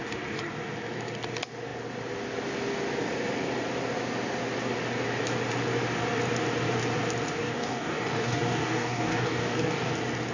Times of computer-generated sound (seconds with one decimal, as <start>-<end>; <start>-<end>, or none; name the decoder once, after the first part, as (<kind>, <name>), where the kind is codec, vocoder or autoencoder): 7.4-9.9 (codec, DAC)

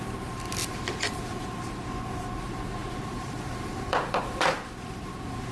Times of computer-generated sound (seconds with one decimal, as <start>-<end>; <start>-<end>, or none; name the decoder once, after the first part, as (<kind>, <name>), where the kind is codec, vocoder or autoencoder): 0.6-1.4 (vocoder, BigVGAN v2); 2.8-4.2